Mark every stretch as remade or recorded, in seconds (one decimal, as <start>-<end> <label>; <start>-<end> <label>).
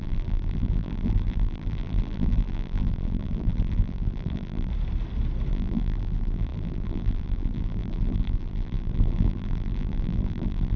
0.0-4.7 remade; 4.7-5.5 recorded; 5.5-10.8 remade